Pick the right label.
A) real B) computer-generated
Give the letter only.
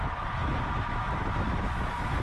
B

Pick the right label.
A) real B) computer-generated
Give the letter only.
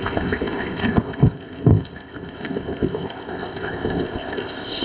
B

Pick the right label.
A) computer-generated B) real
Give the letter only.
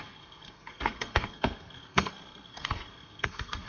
A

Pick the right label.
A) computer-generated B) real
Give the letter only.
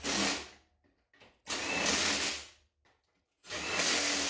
B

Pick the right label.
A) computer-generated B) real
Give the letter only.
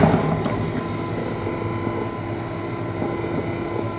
B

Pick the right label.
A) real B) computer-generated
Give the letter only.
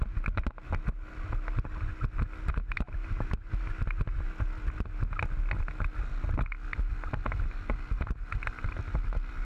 A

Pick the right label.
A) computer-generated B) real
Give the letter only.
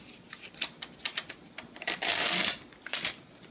B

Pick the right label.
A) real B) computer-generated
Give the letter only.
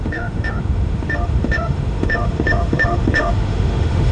B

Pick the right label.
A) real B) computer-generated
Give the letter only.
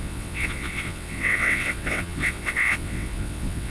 B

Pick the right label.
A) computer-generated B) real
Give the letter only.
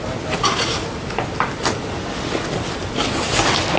B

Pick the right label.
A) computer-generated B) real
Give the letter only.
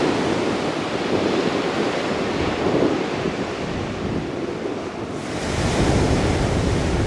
B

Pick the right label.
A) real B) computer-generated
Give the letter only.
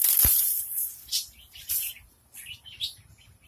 A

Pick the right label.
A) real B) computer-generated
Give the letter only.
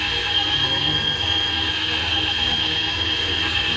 B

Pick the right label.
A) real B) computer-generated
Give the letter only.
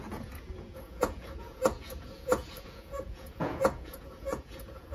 B